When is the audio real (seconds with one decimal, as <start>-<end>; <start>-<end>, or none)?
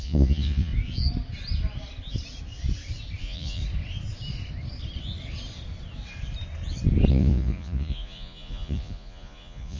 0.7-3.2; 3.6-7.1